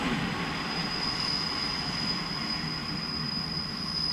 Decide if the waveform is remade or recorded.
recorded